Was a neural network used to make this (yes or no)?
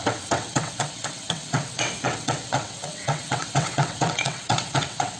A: yes